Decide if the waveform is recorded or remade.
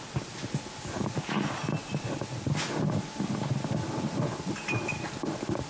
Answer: recorded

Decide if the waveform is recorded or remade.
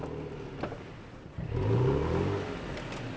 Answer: recorded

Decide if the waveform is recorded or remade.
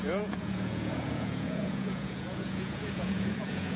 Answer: remade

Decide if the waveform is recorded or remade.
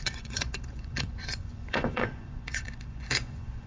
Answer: remade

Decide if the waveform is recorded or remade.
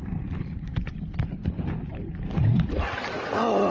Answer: recorded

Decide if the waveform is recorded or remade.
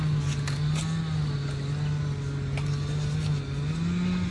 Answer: recorded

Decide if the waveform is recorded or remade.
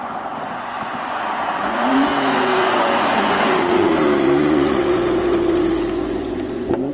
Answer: remade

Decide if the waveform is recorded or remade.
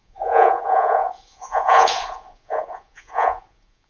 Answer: remade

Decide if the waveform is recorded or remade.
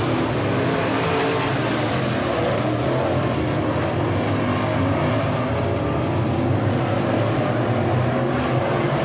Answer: recorded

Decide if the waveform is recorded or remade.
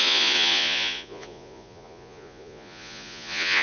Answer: remade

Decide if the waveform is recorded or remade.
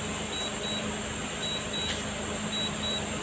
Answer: recorded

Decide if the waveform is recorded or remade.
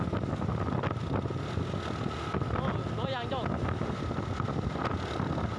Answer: recorded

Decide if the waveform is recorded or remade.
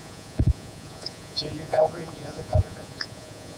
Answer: remade